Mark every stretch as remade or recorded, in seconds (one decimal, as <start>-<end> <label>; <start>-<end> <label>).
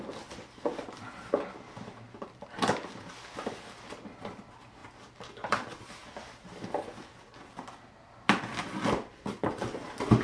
0.0-4.8 recorded; 4.8-5.7 remade; 5.7-10.2 recorded